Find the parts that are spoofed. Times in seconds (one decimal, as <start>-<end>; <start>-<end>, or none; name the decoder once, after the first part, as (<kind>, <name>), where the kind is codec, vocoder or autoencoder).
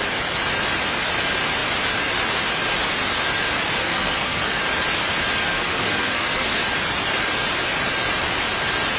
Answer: 3.8-4.6 (codec, SNAC); 5.4-6.6